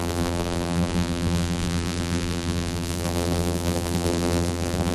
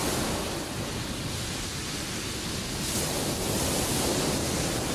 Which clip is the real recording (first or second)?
second